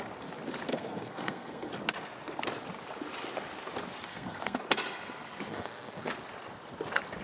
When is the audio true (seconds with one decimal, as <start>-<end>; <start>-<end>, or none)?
0.0-0.7; 1.7-4.1; 4.6-5.5; 6.1-7.2